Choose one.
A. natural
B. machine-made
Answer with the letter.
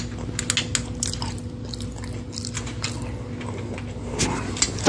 A